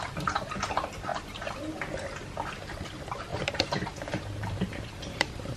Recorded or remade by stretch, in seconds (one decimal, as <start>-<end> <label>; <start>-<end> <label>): 0.0-3.3 recorded; 3.3-5.6 remade